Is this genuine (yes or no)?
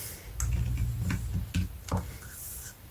yes